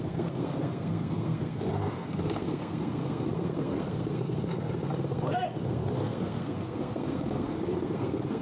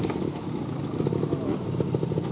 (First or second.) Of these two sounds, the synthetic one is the first